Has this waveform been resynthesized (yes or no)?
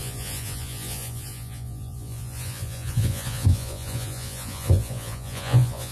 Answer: yes